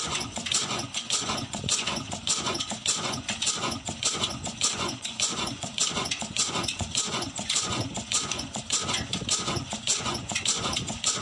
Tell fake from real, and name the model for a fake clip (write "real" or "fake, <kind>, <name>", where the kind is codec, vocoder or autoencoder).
fake, vocoder, Vocos